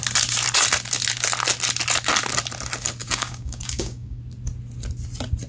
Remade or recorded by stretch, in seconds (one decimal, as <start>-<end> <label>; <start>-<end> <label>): 0.0-3.0 recorded; 3.0-4.2 remade; 4.2-5.5 recorded